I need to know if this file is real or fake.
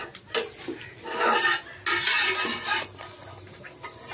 real